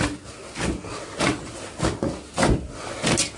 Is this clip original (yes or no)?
yes